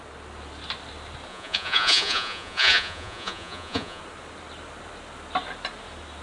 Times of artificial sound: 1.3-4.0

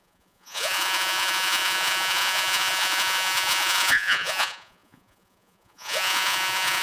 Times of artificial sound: 0.0-6.8

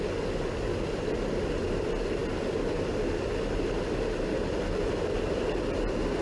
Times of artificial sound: none

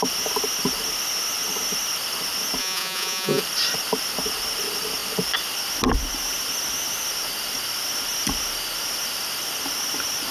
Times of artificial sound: 2.6-3.4

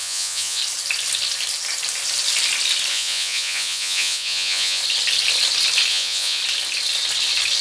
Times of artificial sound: 0.0-0.6; 2.9-4.8; 5.9-6.4